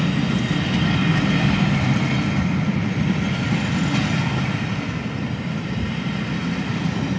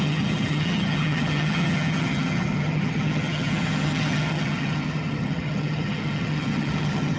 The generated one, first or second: second